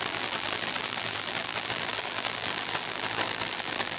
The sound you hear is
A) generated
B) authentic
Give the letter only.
A